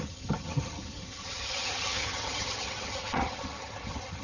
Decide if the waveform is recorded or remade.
remade